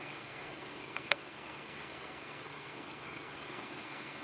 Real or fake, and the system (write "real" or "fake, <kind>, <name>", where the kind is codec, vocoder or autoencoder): fake, codec, SNAC